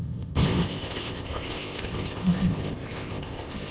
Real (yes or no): no